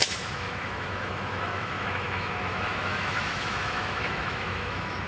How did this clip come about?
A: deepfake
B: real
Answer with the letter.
A